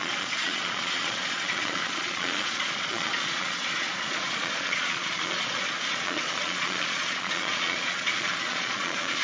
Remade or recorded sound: remade